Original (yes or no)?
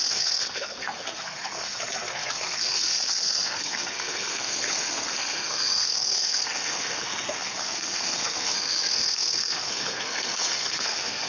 no